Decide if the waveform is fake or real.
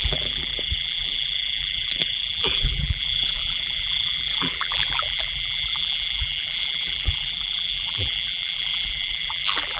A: fake